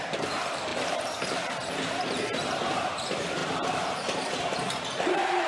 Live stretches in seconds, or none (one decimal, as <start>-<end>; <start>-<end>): none